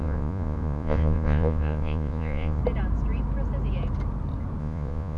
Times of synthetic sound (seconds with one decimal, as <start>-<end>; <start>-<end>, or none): 0.0-2.6; 4.6-5.2